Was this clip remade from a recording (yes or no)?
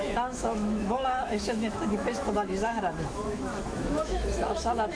yes